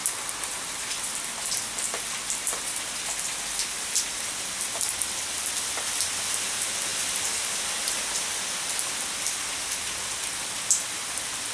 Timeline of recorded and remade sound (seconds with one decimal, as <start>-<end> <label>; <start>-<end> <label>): 0.0-11.5 recorded